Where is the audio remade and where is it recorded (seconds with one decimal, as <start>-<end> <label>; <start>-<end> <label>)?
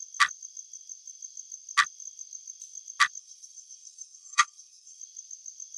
0.0-3.2 recorded; 3.2-5.0 remade; 5.0-5.8 recorded